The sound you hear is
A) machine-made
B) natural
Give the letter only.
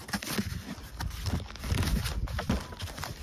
B